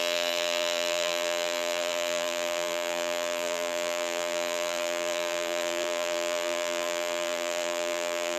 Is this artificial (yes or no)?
yes